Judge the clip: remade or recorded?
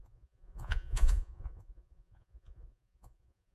remade